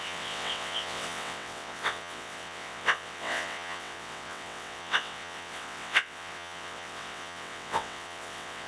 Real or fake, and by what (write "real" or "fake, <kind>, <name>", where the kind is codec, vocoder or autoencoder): fake, vocoder, WaveNeXt